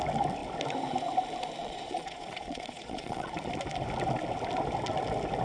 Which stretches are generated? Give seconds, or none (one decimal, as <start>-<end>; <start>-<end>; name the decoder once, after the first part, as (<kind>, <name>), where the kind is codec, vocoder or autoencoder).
1.6-3.3 (vocoder, Vocos)